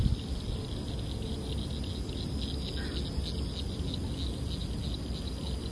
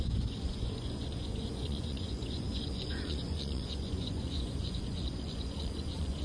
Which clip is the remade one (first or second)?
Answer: second